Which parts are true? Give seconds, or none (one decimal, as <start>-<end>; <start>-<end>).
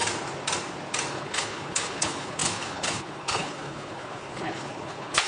0.0-1.1